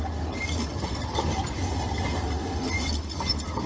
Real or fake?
real